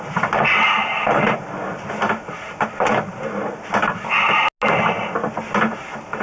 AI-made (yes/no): no